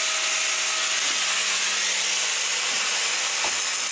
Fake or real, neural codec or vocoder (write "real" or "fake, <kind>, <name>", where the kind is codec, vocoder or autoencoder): real